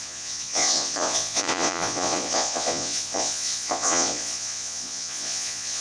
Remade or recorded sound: remade